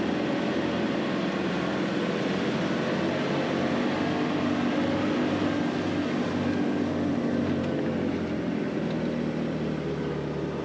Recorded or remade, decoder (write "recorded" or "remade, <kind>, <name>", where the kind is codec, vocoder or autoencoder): recorded